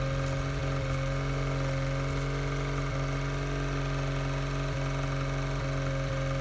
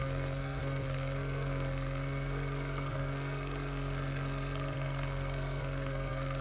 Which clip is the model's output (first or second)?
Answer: second